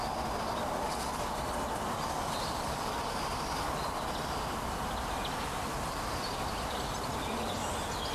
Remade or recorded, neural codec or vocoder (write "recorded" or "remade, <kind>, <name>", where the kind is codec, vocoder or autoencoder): recorded